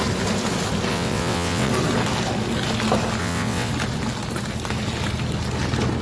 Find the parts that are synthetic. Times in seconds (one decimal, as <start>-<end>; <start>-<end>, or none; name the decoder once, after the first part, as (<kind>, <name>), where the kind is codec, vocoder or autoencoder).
0.9-1.7 (vocoder, WaveNeXt); 3.2-3.7